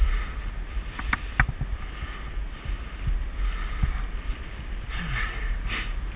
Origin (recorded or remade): recorded